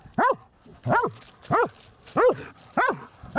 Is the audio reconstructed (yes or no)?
no